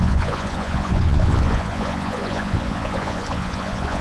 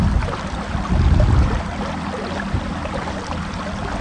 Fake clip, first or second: first